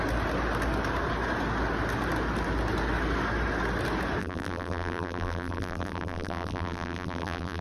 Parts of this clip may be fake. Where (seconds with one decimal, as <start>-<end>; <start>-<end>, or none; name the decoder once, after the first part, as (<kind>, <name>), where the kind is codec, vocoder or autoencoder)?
4.2-7.6 (vocoder, BigVGAN v2)